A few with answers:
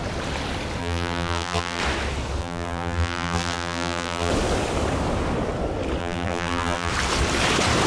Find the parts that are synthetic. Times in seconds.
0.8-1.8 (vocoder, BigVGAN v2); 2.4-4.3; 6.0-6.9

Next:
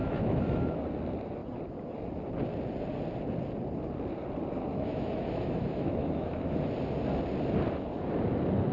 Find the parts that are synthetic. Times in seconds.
0.0-0.8 (autoencoder, DAC-VAE); 4.7-6.6